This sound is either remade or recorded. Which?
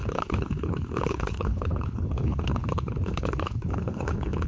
remade